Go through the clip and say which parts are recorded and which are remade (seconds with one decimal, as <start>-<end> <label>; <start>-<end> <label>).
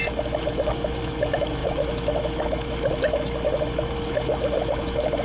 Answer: 0.0-5.2 remade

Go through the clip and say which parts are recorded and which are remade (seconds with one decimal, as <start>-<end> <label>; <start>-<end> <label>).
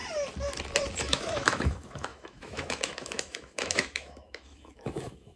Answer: 0.0-1.0 recorded; 1.0-5.4 remade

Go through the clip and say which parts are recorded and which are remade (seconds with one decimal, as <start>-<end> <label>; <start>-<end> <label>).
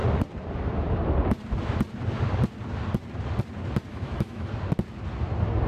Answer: 0.0-3.9 recorded; 3.9-4.5 remade; 4.5-5.7 recorded